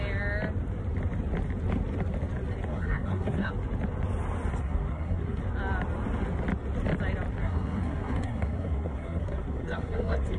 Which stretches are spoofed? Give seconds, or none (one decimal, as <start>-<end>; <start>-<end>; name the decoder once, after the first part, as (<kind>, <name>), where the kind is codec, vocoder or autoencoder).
2.7-3.5 (codec, SNAC); 4.6-5.4; 7.4-10.4